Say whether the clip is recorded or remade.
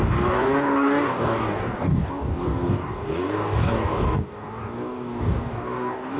remade